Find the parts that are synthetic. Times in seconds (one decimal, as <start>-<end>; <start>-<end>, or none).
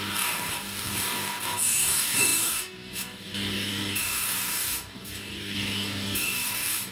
0.0-6.9